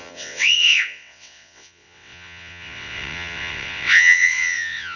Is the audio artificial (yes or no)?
yes